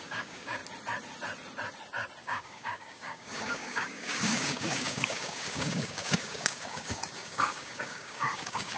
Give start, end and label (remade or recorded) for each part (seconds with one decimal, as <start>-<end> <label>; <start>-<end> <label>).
0.0-0.6 remade; 0.6-2.2 recorded; 2.2-8.8 remade